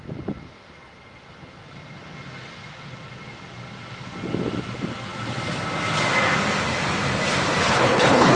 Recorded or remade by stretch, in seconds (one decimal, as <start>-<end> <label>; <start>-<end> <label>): 0.0-7.6 recorded; 7.6-8.4 remade